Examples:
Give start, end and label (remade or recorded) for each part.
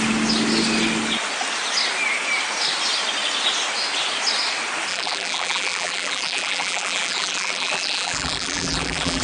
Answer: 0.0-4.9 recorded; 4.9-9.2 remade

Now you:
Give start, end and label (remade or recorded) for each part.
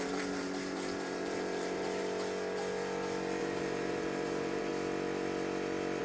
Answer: 0.0-2.0 remade; 2.0-3.4 recorded; 3.4-4.7 remade; 4.7-6.0 recorded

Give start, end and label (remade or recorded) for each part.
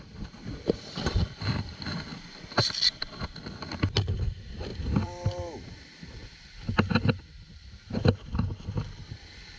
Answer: 0.0-4.7 recorded; 4.7-5.3 remade; 5.3-6.2 recorded; 6.2-7.1 remade; 7.1-9.6 recorded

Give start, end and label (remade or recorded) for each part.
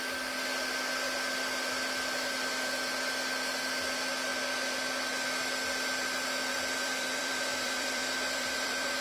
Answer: 0.0-6.5 recorded; 6.5-9.0 remade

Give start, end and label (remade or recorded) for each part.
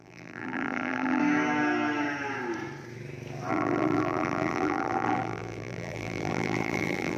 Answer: 0.0-1.2 remade; 1.2-3.5 recorded; 3.5-7.2 remade